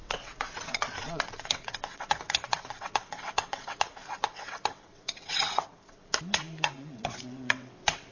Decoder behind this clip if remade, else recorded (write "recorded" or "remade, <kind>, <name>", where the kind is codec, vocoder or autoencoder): remade, vocoder, WaveNeXt